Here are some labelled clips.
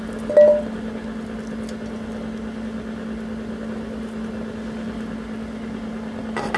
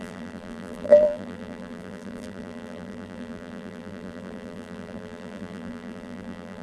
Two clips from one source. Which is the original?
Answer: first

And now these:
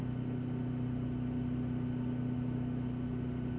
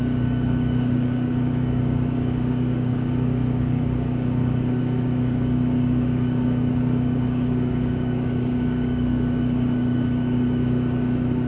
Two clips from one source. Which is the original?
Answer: first